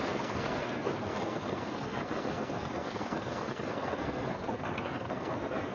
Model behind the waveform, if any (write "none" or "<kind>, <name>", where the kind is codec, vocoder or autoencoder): codec, SNAC